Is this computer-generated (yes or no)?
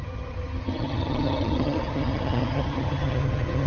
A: yes